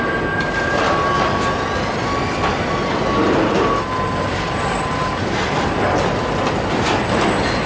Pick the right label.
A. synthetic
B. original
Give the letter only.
B